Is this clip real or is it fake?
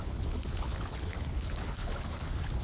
fake